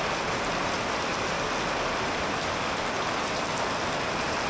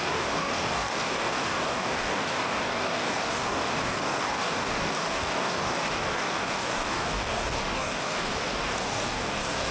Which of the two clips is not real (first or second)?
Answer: second